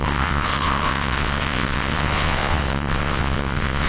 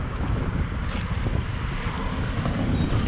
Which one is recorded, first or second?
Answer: second